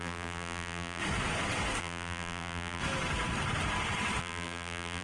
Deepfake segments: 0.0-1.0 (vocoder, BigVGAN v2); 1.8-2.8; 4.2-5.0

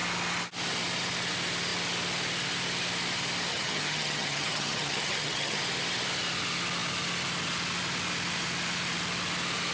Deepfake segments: 3.5-5.6 (vocoder, HiFi-GAN)

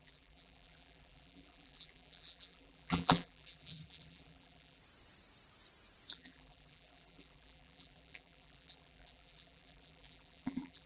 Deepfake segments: 0.0-4.8 (vocoder, BigVGAN v2); 6.1-10.9

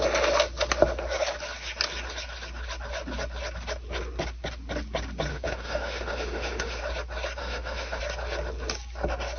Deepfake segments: 5.3-6.8 (autoencoder, DAC-VAE); 7.4-8.0

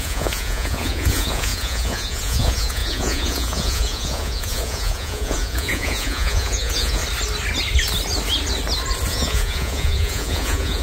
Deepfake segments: 0.0-7.0 (vocoder, Vocos); 9.1-10.8

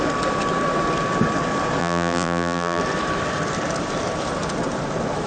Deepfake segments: 1.8-2.8 (vocoder, BigVGAN v2)